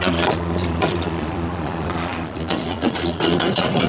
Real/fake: fake